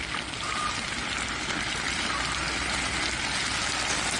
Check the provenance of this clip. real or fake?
fake